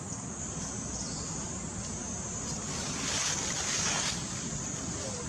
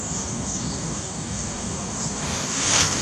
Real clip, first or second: first